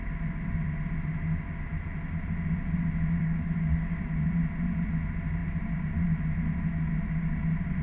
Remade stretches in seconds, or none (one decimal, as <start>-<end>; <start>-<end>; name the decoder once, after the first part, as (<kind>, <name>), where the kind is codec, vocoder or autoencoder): 3.2-4.0 (codec, DAC)